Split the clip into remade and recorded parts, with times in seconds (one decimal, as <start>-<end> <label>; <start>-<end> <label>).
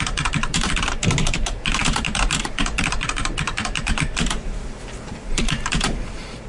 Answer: 0.0-6.5 remade